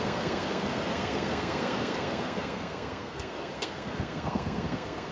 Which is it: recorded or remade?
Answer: remade